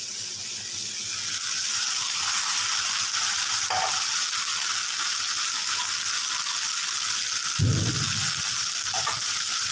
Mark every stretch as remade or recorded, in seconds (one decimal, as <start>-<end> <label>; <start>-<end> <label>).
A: 0.0-1.7 recorded; 1.7-4.1 remade; 4.1-9.7 recorded